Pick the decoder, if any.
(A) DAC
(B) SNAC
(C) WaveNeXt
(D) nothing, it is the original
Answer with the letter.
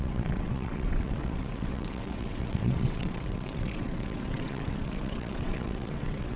C